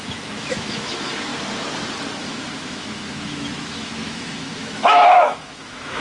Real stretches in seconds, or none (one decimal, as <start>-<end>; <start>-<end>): 1.3-2.2